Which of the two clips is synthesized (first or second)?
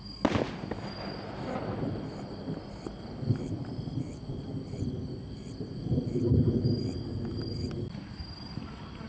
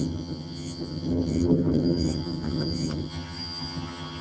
second